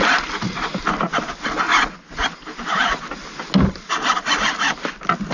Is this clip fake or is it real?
real